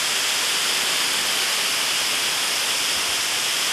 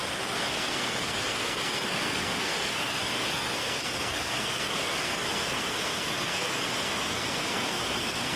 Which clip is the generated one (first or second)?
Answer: second